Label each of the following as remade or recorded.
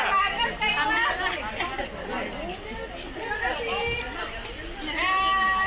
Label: recorded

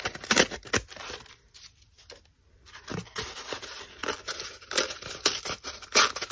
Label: recorded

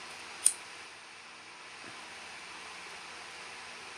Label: recorded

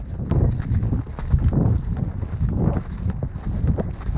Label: recorded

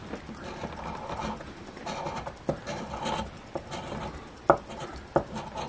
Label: recorded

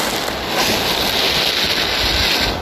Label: recorded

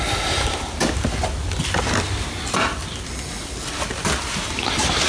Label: recorded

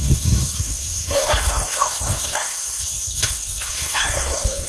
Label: remade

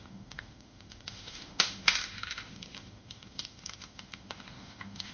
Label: remade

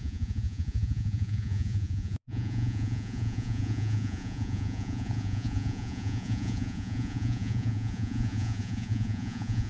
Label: remade